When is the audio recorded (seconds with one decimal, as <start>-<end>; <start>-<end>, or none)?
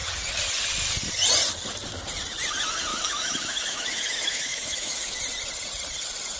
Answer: 0.0-2.9; 5.2-6.4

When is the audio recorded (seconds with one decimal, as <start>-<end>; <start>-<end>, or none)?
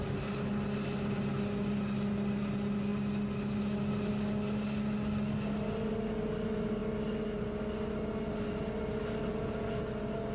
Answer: 0.0-10.3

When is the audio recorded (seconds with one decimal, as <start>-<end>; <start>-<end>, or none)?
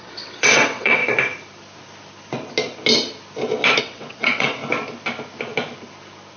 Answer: 1.0-3.8; 4.6-6.4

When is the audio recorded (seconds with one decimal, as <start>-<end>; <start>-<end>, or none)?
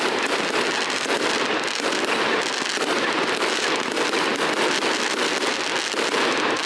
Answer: 0.0-6.7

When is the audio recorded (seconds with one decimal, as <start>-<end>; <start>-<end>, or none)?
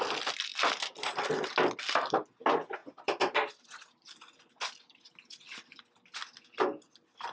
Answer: 0.0-7.3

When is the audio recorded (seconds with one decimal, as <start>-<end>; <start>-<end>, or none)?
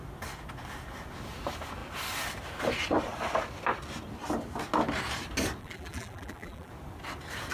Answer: 0.0-5.6; 6.7-7.5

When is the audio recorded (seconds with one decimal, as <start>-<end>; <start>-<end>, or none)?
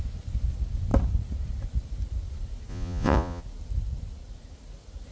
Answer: 0.0-2.7; 3.4-5.1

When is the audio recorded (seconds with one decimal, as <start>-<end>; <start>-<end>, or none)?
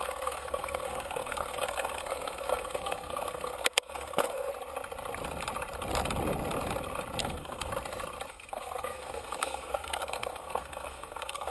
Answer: 4.5-7.2; 7.7-8.3